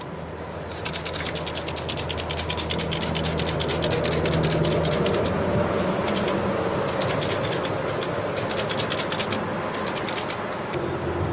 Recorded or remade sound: recorded